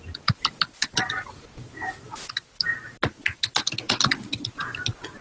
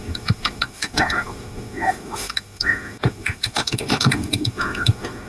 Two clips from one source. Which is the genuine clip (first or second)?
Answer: first